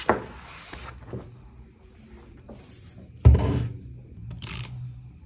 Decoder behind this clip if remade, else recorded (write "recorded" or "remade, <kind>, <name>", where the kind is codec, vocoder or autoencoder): recorded